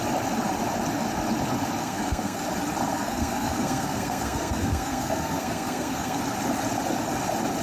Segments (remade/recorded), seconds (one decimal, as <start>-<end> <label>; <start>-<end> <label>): 0.0-1.8 recorded; 1.8-2.4 remade; 2.4-2.9 recorded; 2.9-6.2 remade; 6.2-7.6 recorded